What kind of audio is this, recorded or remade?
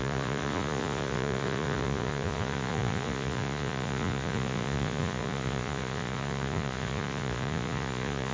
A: remade